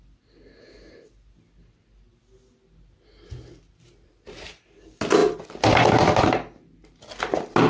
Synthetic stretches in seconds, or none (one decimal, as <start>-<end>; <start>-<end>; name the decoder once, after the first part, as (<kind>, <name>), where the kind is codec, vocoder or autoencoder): none